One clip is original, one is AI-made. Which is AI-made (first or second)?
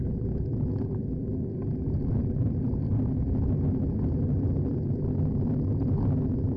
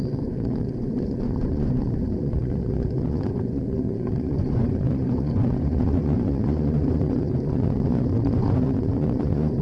second